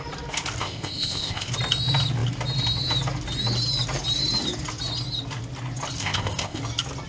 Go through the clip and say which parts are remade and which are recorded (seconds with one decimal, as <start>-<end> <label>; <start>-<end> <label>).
0.0-0.6 recorded; 0.6-1.5 remade; 1.5-6.0 recorded; 6.0-6.6 remade; 6.6-7.1 recorded